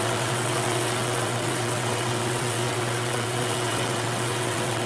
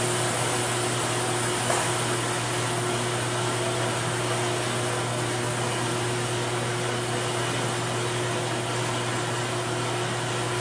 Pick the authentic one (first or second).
second